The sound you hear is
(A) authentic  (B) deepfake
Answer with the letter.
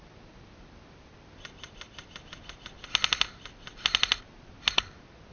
A